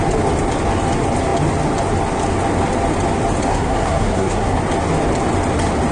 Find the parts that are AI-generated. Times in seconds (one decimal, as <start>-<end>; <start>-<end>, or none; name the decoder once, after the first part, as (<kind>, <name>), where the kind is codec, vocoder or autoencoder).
3.5-4.6 (codec, SNAC)